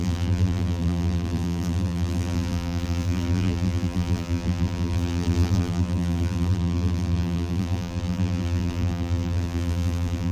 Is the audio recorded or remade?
remade